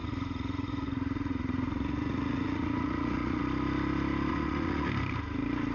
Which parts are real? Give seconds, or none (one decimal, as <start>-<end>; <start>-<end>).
3.4-4.3; 4.9-5.7